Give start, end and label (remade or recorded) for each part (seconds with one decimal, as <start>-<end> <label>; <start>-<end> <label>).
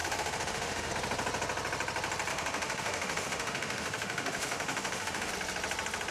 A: 0.0-0.9 remade; 0.9-2.3 recorded; 2.3-5.3 remade; 5.3-6.1 recorded